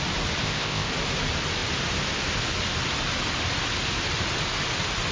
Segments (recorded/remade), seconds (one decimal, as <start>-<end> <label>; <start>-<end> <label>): 0.0-0.4 recorded; 0.4-0.9 remade; 0.9-5.1 recorded